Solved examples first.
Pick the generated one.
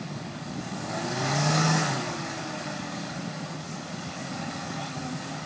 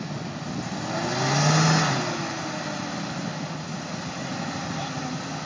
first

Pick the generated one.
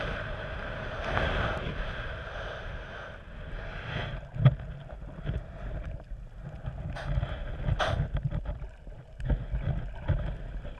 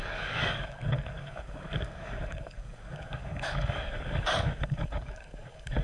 second